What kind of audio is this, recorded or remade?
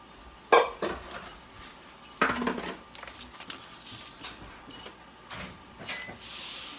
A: recorded